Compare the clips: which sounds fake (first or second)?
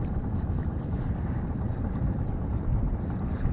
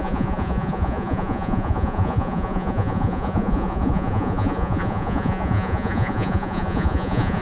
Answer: second